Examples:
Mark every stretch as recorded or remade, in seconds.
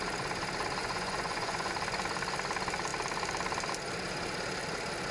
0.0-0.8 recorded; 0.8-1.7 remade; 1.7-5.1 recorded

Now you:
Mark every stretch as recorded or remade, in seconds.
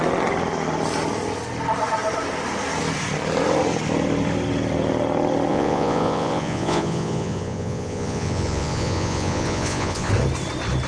0.0-5.5 recorded; 5.5-10.1 remade; 10.1-10.9 recorded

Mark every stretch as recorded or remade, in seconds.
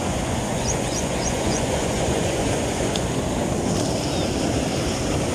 0.0-3.2 remade; 3.2-5.3 recorded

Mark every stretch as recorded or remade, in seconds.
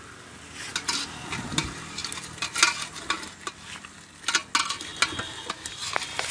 0.0-6.3 recorded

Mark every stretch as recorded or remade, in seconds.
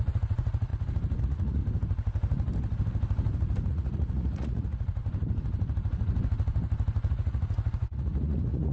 0.0-0.7 remade; 0.7-1.2 recorded; 1.2-1.6 remade; 1.6-3.7 recorded; 3.7-5.0 remade; 5.0-7.1 recorded; 7.1-8.7 remade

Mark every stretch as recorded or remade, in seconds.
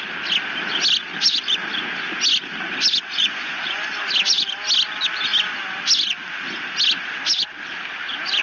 0.0-3.2 recorded; 3.2-3.9 remade; 3.9-8.4 recorded